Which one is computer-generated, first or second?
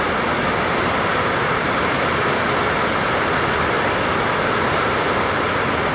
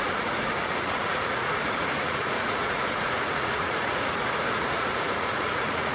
second